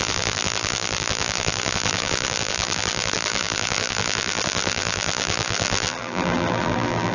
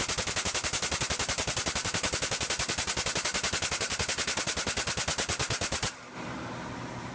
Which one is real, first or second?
second